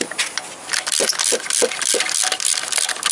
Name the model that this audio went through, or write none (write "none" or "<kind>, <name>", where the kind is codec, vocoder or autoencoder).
none